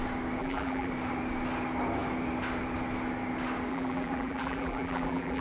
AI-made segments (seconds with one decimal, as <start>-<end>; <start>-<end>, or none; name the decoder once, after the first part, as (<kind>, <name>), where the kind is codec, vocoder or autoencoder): 0.4-0.9 (vocoder, BigVGAN v2); 3.7-5.4